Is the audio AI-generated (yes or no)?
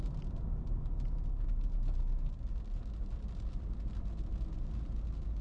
no